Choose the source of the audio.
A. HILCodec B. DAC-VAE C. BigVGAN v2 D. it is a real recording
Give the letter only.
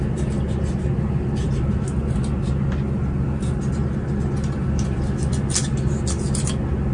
D